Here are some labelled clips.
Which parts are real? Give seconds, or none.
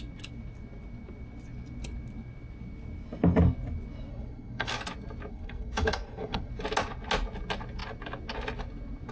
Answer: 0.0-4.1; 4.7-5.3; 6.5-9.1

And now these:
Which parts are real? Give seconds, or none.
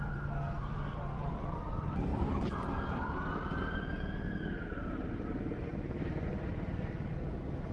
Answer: 0.0-2.1; 3.0-5.7; 6.3-7.7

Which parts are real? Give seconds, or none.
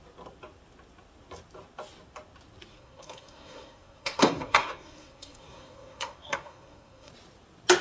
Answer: 0.0-2.7; 7.1-7.8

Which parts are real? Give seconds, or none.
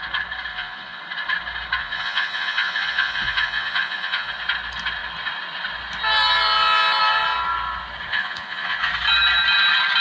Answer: 0.0-0.5; 1.0-1.8; 4.3-8.1; 8.9-10.0